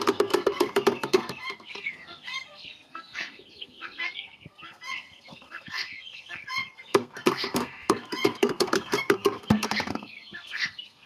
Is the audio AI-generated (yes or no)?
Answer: yes